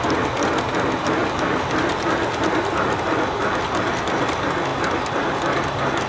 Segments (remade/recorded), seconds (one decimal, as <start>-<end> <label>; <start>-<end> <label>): 0.0-6.1 recorded